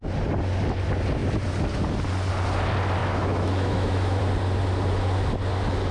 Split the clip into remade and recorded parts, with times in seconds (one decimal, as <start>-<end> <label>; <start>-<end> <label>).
0.0-3.0 recorded; 3.0-4.2 remade; 4.2-5.9 recorded